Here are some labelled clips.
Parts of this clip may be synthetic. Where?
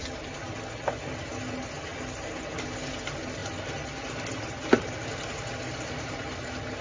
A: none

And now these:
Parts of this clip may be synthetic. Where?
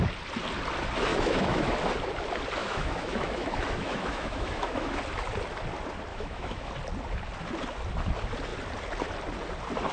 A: 1.1-1.7 (autoencoder, DAC-VAE); 2.6-5.0; 6.1-6.7